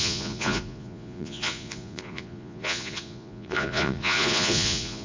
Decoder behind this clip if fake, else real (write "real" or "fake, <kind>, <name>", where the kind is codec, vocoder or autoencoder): fake, vocoder, Vocos